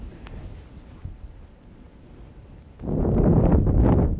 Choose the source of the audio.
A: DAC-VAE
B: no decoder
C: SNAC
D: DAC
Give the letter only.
B